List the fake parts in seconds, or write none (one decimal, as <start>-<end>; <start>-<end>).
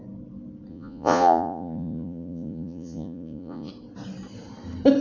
0.7-3.7